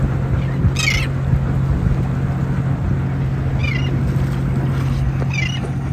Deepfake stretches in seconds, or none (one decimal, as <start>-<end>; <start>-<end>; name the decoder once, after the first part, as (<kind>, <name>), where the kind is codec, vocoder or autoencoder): none